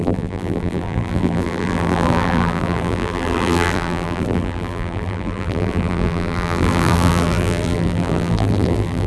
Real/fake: fake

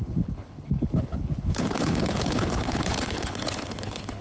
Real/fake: fake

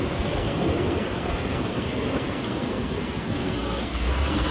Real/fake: fake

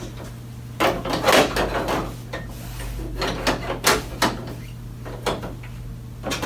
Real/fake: real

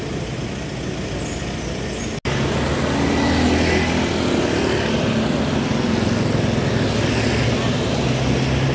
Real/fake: real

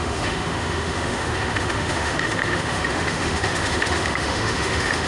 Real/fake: fake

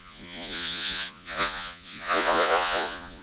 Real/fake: fake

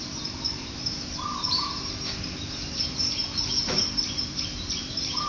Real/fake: fake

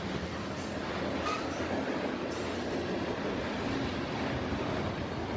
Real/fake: fake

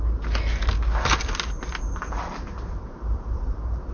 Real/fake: real